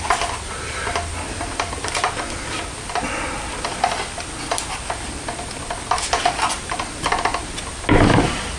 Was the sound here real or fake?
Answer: real